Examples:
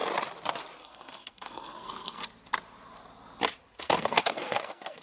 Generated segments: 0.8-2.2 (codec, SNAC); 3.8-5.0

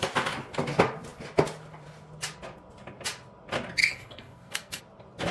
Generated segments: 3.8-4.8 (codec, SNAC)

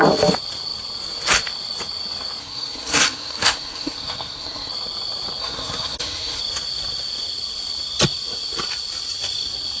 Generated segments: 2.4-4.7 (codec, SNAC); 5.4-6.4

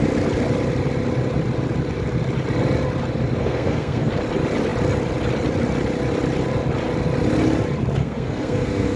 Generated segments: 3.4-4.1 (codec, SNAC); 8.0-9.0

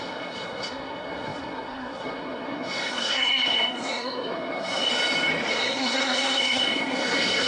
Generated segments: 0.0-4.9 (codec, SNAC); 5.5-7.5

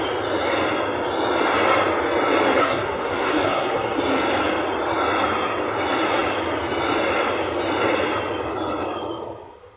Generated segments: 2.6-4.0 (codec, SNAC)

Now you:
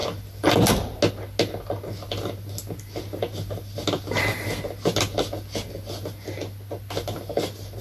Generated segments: none